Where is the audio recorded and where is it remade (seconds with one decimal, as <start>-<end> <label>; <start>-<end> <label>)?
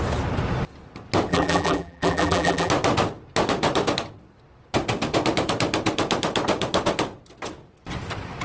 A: 0.0-1.3 recorded; 1.3-2.7 remade; 2.7-8.4 recorded